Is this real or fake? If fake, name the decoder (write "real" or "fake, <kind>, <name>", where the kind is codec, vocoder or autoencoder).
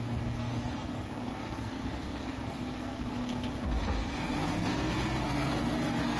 fake, codec, SNAC